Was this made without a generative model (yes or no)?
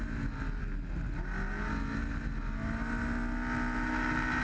yes